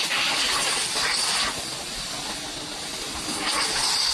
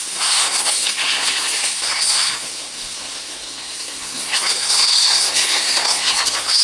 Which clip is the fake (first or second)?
second